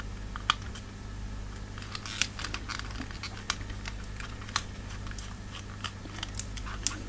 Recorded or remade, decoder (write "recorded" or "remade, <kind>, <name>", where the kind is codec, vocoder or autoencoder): recorded